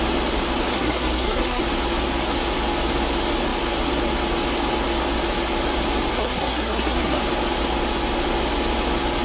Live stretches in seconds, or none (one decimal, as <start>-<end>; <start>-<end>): 0.0-0.7; 1.6-6.1; 7.2-9.2